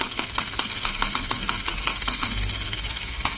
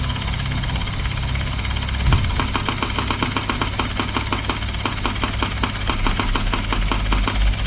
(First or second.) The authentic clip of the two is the second